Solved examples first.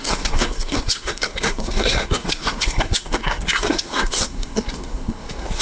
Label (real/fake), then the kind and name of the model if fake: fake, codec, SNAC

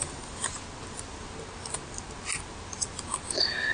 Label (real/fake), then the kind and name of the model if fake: real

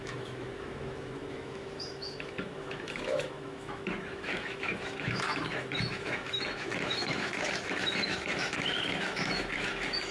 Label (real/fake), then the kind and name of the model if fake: fake, autoencoder, DAC-VAE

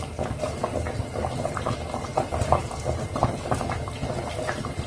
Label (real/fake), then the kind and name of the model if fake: real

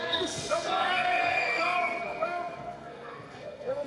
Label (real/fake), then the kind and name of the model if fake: fake, codec, SNAC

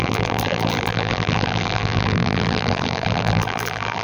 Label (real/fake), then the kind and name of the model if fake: fake, vocoder, BigVGAN v2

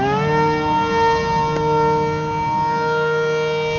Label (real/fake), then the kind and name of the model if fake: real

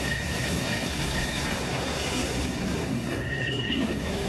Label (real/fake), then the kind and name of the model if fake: fake, codec, SNAC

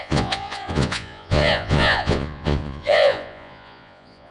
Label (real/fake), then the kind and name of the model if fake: fake, vocoder, Vocos